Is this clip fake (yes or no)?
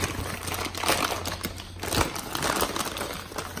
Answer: no